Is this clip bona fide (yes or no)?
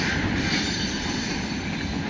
yes